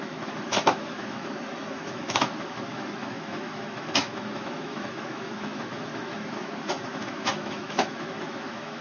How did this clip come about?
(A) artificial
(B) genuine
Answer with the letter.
A